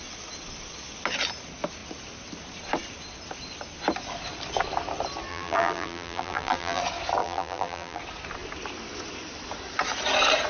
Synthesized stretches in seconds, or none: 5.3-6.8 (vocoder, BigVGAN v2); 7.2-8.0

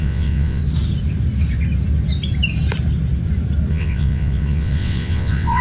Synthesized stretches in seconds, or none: 0.0-0.6 (vocoder, WaveNeXt); 3.7-5.6

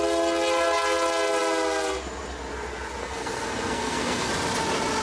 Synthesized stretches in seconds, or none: 3.0-4.3 (codec, SNAC)

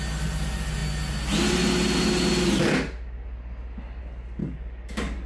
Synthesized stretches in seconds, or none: 4.4-5.3 (codec, DAC)